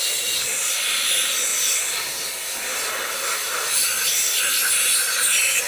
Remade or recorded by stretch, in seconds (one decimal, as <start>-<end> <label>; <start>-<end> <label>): 0.0-5.7 recorded

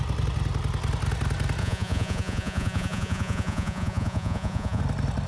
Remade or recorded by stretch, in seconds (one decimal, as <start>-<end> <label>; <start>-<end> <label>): 0.0-1.6 recorded; 1.6-4.8 remade; 4.8-5.3 recorded

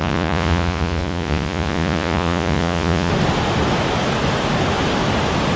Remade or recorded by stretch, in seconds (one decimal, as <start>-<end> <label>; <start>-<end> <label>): 0.0-3.1 remade; 3.1-5.6 recorded